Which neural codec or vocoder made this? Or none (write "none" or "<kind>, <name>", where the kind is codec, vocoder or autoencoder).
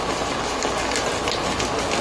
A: none